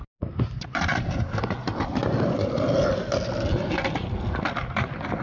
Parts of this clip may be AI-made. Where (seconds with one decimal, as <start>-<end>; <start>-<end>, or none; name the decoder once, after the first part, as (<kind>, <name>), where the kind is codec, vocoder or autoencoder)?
none